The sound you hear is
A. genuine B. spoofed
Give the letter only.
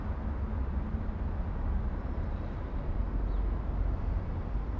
A